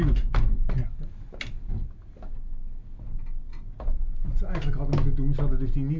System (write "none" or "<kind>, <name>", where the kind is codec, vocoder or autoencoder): none